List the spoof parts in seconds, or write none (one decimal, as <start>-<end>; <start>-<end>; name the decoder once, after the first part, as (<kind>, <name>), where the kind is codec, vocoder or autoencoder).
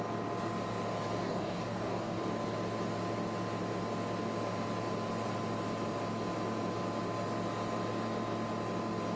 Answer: 1.2-2.2 (codec, DAC)